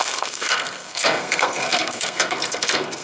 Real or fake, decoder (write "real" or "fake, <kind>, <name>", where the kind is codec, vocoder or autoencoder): fake, codec, SNAC